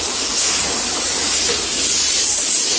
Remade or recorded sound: recorded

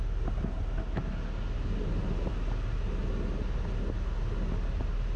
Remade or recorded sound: recorded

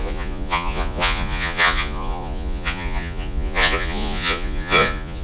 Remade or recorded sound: remade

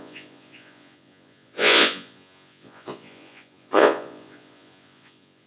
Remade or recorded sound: remade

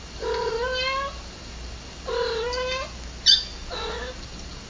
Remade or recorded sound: recorded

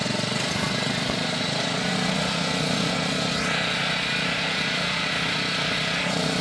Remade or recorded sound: remade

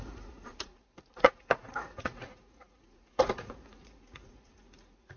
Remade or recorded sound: remade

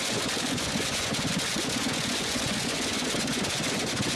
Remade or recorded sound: remade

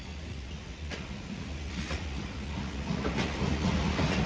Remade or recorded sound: remade